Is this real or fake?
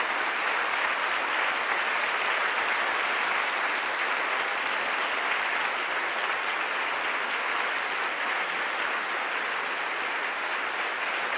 real